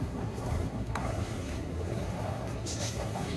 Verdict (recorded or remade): remade